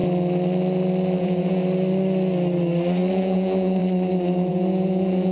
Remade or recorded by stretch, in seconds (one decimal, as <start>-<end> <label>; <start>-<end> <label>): 0.0-1.2 recorded; 1.2-1.6 remade; 1.6-3.1 recorded; 3.1-3.8 remade; 3.8-4.5 recorded; 4.5-5.3 remade